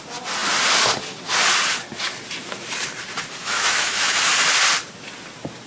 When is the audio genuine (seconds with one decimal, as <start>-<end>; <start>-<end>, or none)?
0.0-3.4; 4.2-5.7